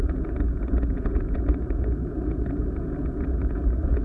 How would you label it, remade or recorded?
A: remade